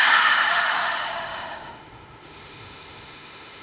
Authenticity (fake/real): fake